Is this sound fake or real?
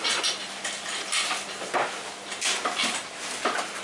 real